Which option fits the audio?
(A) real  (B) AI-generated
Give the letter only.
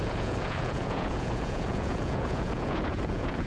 B